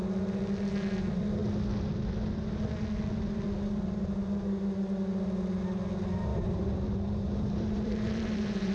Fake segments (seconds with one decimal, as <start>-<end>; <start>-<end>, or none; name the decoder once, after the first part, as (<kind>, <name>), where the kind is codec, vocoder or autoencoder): 6.3-8.7 (vocoder, BigVGAN v2)